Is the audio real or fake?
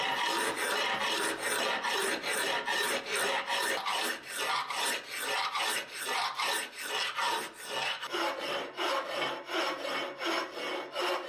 real